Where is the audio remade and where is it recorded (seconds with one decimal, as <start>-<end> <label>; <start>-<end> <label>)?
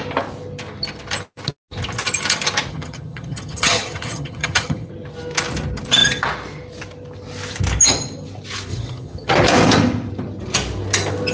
0.0-2.7 recorded; 2.7-4.9 remade; 4.9-8.7 recorded; 8.7-9.3 remade; 9.3-11.3 recorded